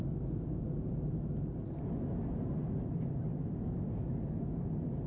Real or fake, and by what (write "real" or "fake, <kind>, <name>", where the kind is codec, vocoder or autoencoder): real